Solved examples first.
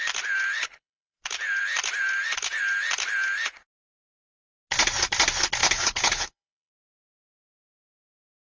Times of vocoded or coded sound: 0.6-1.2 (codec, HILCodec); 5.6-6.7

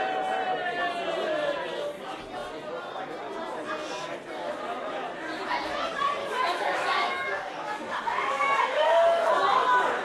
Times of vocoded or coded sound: 6.2-9.3 (codec, DAC)

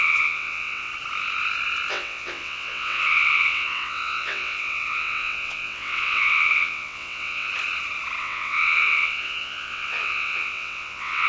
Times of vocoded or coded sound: 0.0-0.9 (vocoder, WaveNeXt); 1.9-7.5; 8.2-11.3

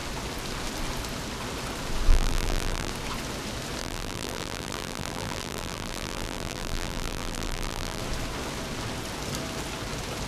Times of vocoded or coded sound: 2.1-2.9 (vocoder, BigVGAN v2); 3.8-8.0

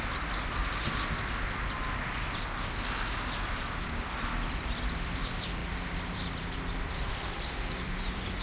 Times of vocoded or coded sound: 0.0-0.6 (vocoder, BigVGAN v2); 4.1-8.4

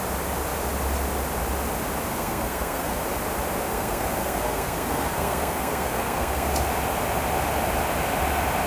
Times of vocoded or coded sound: 2.1-3.0 (codec, SNAC); 3.7-6.5

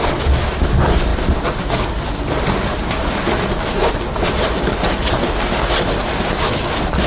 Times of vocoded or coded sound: none